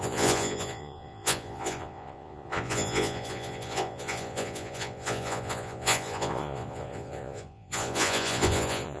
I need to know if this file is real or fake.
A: fake